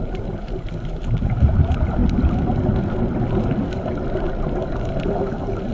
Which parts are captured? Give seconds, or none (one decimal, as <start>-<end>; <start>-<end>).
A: 0.0-5.7

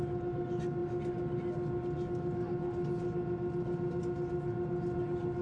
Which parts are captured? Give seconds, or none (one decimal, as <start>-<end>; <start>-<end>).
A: 0.0-5.4

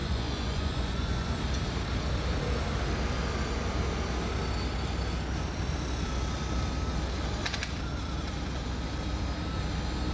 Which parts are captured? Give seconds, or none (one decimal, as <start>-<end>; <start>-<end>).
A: 1.3-10.1

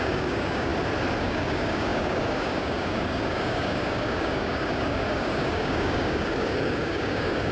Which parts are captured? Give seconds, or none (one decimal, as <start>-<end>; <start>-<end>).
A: 0.7-1.2

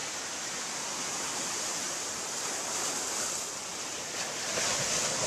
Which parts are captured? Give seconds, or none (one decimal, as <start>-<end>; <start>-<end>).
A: 0.0-5.3

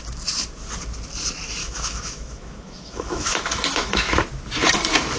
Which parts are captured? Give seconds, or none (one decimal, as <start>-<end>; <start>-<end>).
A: 0.0-1.6; 4.2-5.2